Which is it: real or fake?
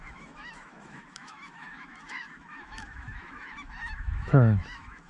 fake